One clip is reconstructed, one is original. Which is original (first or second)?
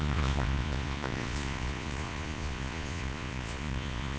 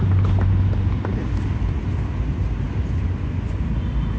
second